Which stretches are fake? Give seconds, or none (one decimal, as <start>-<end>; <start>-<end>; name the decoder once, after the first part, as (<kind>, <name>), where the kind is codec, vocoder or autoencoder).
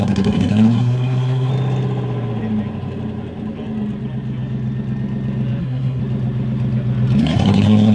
0.0-1.5 (codec, SNAC); 5.6-6.0; 7.2-7.9